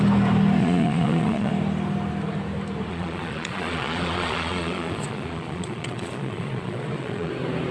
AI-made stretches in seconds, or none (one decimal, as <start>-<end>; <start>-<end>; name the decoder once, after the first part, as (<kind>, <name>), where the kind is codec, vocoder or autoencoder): 0.6-1.5 (vocoder, Vocos); 2.9-7.3